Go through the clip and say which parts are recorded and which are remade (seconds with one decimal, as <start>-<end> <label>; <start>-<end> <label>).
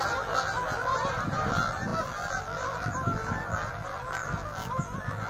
0.0-0.9 remade; 0.9-1.5 recorded; 1.5-5.3 remade